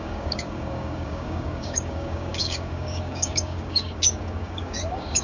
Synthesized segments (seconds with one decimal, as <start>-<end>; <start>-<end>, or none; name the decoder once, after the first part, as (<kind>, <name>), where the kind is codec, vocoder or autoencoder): 0.0-5.2 (codec, DAC)